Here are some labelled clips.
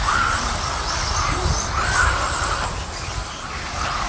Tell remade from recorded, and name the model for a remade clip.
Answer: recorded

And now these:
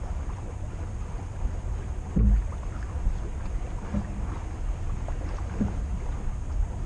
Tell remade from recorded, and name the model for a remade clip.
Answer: recorded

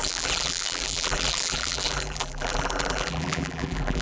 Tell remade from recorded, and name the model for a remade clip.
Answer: remade, vocoder, BigVGAN v2